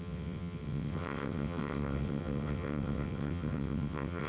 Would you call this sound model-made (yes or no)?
yes